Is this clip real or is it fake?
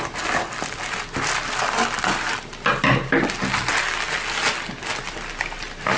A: real